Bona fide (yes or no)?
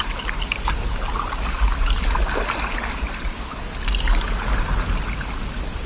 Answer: yes